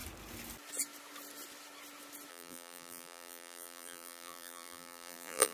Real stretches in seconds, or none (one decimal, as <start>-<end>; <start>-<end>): 0.0-2.3